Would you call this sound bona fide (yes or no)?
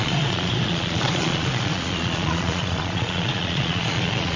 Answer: no